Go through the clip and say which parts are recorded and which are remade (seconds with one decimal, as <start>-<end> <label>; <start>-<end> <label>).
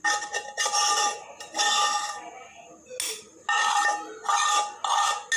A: 0.0-5.4 recorded